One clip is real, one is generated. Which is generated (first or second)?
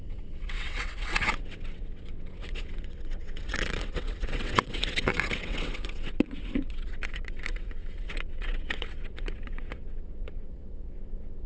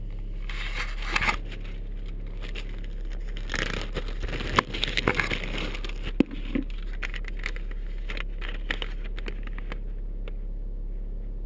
first